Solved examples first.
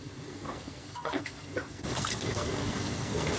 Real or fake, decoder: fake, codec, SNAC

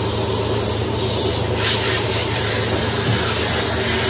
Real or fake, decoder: real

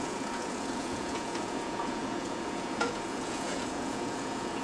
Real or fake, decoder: fake, vocoder, Vocos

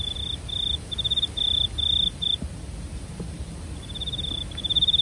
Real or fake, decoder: real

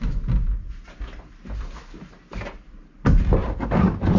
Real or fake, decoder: real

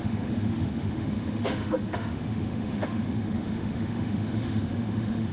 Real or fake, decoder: fake, autoencoder, DAC-VAE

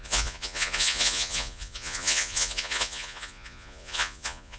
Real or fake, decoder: fake, vocoder, Vocos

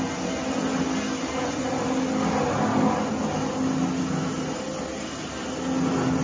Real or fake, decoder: real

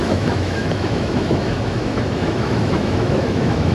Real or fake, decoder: fake, autoencoder, DAC-VAE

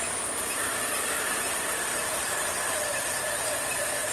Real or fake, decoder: fake, vocoder, BigVGAN v2